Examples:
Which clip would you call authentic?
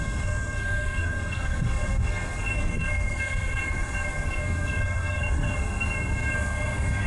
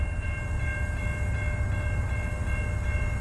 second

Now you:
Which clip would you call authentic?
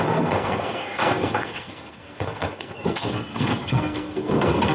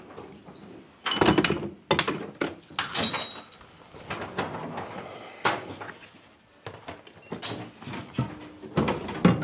second